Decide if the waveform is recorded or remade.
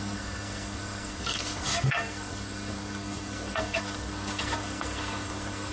remade